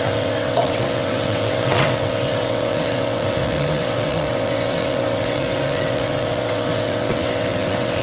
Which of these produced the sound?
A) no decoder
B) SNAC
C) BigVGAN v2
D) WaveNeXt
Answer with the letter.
D